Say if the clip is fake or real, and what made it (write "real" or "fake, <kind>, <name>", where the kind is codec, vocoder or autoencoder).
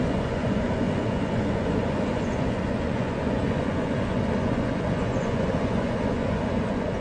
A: fake, vocoder, Vocos